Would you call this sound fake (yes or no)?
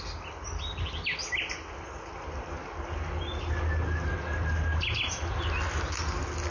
no